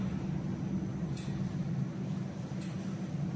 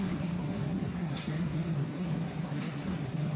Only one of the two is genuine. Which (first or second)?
first